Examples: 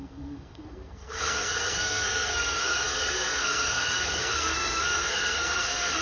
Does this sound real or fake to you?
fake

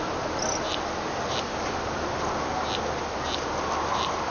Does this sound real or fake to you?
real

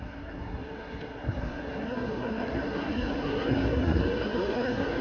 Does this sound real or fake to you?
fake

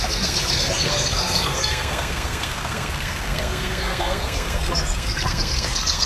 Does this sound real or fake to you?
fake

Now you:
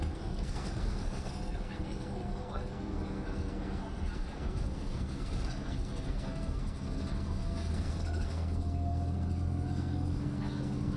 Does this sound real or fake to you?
fake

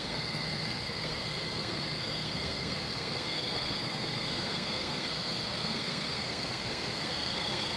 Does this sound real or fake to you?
fake